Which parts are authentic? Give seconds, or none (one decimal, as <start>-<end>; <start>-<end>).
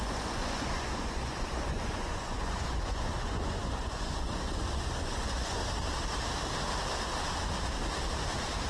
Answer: 5.6-8.7